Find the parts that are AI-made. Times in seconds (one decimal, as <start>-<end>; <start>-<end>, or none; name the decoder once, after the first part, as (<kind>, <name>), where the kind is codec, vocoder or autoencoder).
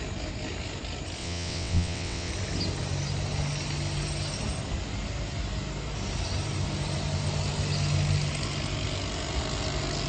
1.2-2.3 (vocoder, WaveNeXt)